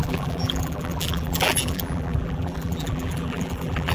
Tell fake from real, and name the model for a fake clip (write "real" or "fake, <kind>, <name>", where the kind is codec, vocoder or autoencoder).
fake, vocoder, BigVGAN v2